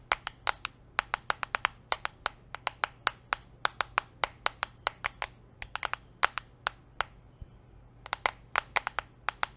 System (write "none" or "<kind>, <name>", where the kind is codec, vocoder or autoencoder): none